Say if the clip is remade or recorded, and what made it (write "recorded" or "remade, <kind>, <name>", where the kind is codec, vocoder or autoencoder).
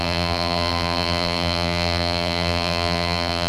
remade, vocoder, BigVGAN v2